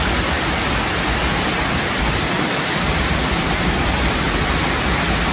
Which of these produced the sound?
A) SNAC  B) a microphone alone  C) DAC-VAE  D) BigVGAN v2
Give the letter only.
B